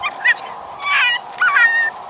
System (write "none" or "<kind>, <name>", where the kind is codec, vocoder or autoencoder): none